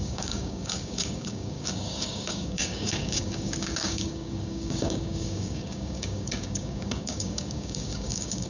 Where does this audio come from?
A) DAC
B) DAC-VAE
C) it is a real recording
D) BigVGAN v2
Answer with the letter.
A